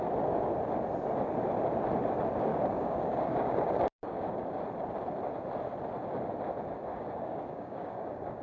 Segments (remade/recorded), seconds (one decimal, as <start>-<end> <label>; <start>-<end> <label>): 0.0-2.5 recorded; 2.5-4.6 remade; 4.6-6.9 recorded; 6.9-8.4 remade